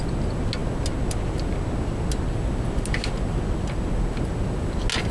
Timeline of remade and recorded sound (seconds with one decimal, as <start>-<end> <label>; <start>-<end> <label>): 0.0-5.1 recorded